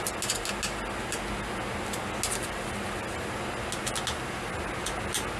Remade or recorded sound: recorded